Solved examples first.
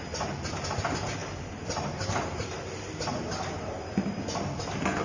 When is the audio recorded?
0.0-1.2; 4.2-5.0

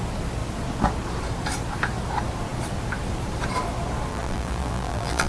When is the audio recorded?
0.0-4.1

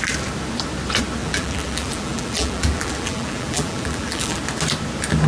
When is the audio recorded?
0.0-1.2; 4.4-5.3

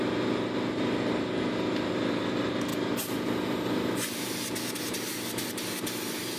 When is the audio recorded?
0.0-2.7; 4.3-6.4